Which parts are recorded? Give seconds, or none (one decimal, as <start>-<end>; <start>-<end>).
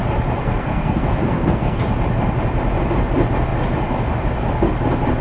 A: 0.0-0.4; 1.8-5.2